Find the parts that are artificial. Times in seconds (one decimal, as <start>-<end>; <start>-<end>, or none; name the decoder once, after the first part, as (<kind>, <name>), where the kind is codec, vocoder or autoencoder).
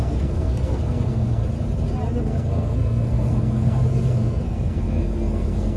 0.0-1.4 (codec, SNAC); 2.2-5.8